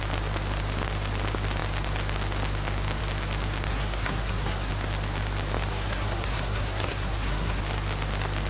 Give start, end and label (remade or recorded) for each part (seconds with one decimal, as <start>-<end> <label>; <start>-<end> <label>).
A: 0.0-3.7 recorded; 3.7-4.7 remade; 4.7-5.7 recorded; 5.7-7.6 remade; 7.6-8.5 recorded